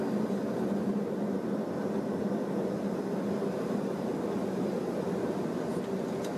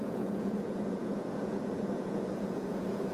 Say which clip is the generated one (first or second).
second